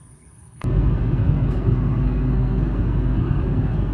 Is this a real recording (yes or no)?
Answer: no